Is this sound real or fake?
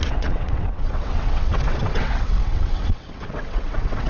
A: fake